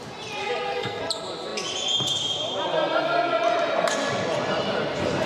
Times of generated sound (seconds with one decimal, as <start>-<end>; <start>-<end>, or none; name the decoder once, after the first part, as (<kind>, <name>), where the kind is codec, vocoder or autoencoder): 0.4-1.0 (codec, SNAC)